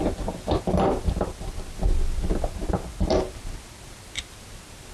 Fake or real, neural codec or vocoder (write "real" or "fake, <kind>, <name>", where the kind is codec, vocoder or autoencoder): real